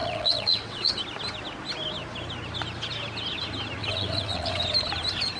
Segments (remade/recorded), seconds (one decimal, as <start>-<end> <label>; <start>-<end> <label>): 0.0-1.0 remade; 1.0-3.8 recorded; 3.8-4.6 remade; 4.6-5.4 recorded